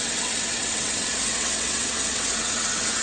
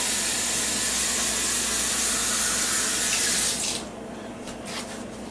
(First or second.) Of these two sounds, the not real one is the first